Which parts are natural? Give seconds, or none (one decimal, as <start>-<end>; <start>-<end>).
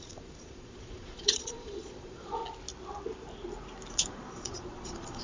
2.4-3.9